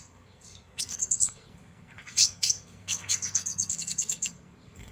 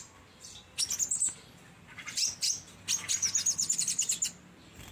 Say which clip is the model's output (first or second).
first